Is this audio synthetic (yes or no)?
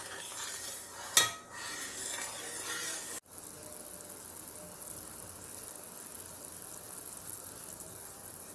no